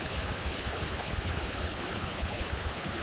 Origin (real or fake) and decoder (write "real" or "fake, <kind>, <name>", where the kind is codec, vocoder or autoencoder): fake, codec, HILCodec